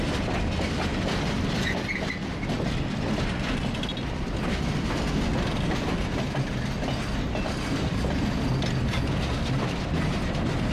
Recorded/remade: recorded